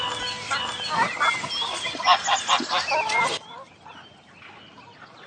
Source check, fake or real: real